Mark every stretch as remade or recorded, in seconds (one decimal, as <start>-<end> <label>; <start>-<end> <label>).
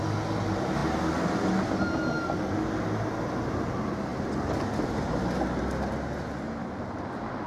0.0-7.5 recorded